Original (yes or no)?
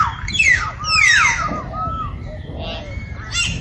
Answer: yes